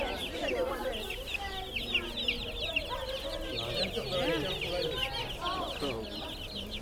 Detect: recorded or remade recorded